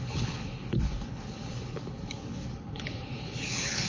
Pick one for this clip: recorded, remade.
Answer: remade